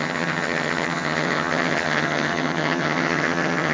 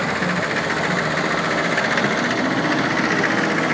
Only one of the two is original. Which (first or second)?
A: second